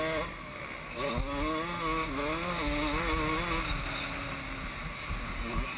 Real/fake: real